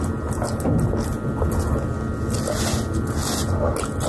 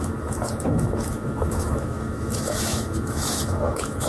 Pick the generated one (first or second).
second